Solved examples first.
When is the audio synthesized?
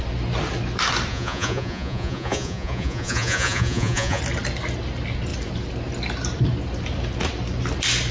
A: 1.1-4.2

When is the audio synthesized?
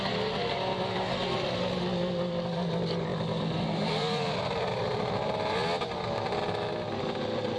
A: 3.1-4.8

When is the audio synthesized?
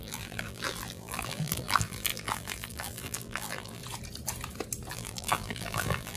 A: 0.0-3.8; 4.9-6.2